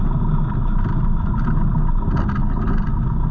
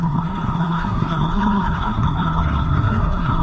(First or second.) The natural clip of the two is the first